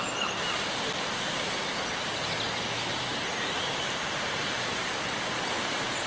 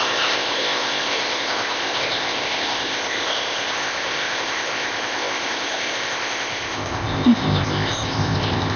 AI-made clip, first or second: second